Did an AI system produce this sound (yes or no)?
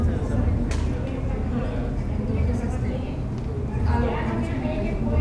no